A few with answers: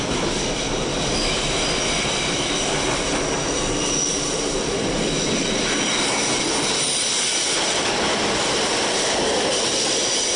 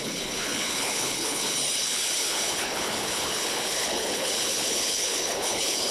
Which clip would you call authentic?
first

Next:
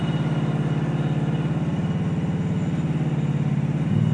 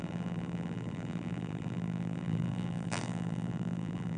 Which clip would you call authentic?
first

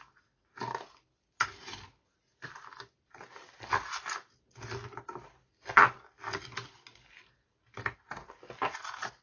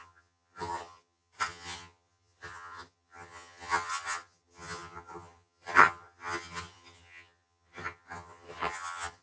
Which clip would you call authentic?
first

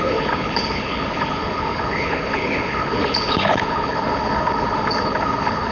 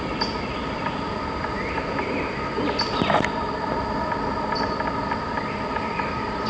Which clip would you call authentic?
second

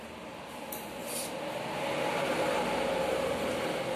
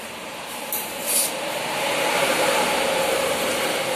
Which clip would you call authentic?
first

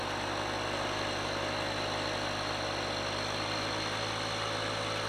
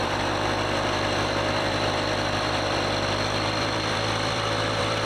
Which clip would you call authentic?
first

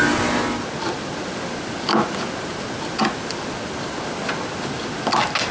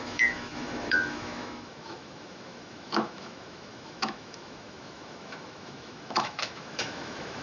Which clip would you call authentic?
first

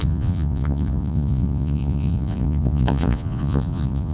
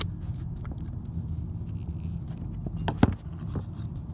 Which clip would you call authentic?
second